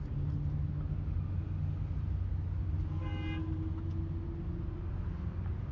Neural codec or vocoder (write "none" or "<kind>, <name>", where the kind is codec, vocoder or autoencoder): none